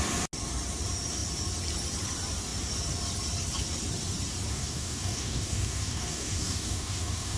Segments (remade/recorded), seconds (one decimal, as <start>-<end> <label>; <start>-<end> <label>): 0.0-4.5 recorded; 4.5-7.4 remade